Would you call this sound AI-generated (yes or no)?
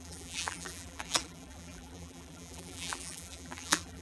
yes